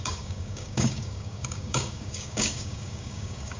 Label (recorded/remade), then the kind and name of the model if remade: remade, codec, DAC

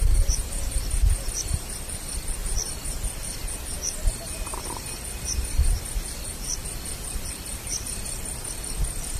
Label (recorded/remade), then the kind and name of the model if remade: remade, vocoder, BigVGAN v2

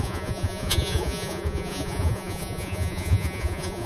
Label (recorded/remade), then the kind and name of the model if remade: remade, vocoder, Vocos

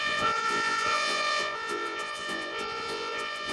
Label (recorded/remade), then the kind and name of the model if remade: remade, vocoder, Vocos